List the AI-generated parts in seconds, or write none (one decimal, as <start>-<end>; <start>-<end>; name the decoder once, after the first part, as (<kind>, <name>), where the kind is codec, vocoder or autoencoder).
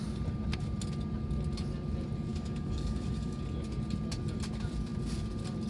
2.3-3.4 (codec, DAC)